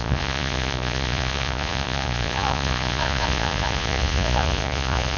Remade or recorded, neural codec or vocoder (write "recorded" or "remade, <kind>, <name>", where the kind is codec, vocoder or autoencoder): remade, vocoder, Vocos